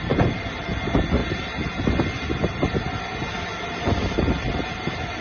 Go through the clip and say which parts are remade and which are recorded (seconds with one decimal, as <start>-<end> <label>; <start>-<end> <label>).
0.0-5.2 recorded

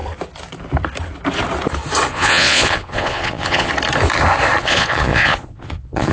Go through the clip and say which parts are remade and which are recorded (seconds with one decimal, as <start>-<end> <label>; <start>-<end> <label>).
0.0-2.1 recorded; 2.1-3.7 remade; 3.7-4.6 recorded; 4.6-6.1 remade

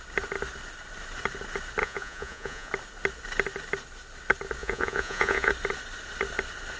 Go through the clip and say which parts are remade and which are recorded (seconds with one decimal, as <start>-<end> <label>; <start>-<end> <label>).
0.0-1.8 recorded; 1.8-2.7 remade; 2.7-4.6 recorded; 4.6-5.5 remade; 5.5-6.8 recorded

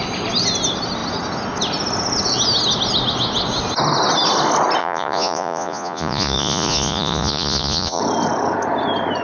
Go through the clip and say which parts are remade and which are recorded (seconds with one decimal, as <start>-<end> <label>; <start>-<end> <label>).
0.0-4.8 recorded; 4.8-8.0 remade; 8.0-9.2 recorded

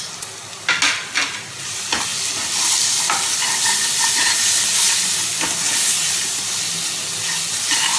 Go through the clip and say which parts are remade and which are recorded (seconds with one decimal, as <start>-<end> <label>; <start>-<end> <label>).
0.0-8.0 recorded

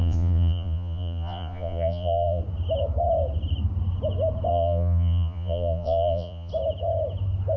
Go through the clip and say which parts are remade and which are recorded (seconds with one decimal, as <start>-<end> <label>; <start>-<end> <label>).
0.0-2.4 remade; 2.4-4.5 recorded; 4.5-6.5 remade; 6.5-7.6 recorded

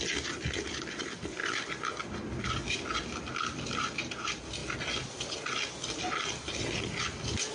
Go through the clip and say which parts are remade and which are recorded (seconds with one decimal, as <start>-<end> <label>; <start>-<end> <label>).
0.0-7.5 recorded